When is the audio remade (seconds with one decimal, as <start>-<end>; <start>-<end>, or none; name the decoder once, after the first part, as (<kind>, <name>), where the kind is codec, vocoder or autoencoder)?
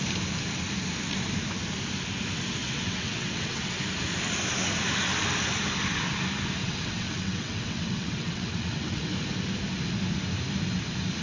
2.6-3.8 (vocoder, WaveNeXt); 6.6-9.1